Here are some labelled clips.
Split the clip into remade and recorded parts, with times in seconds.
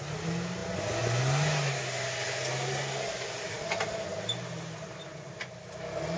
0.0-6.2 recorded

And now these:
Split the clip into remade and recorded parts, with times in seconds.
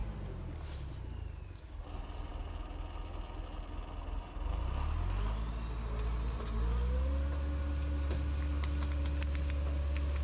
0.0-10.2 recorded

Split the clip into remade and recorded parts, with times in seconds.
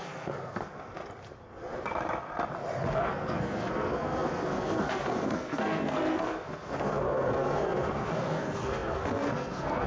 0.0-1.0 remade; 1.0-2.9 recorded; 2.9-9.9 remade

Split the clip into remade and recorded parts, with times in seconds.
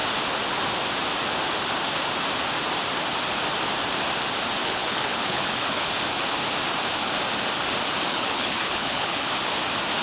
0.0-4.6 recorded; 4.6-5.9 remade; 5.9-8.1 recorded; 8.1-9.3 remade; 9.3-10.0 recorded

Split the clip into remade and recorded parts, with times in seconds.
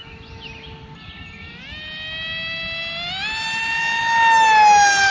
0.0-5.1 recorded